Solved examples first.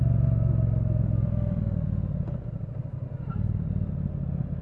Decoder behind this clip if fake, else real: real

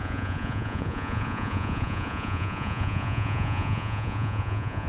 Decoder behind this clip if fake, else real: fake, vocoder, Vocos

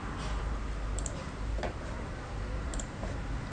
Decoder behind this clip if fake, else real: fake, vocoder, BigVGAN v2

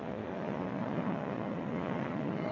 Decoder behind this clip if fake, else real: fake, vocoder, Vocos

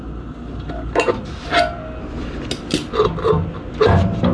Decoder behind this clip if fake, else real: real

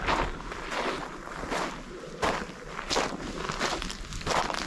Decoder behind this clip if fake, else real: real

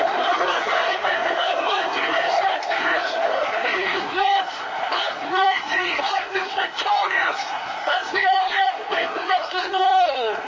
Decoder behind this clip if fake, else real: fake, codec, SNAC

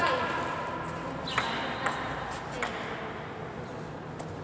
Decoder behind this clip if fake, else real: real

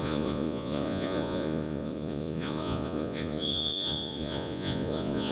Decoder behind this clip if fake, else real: fake, vocoder, Vocos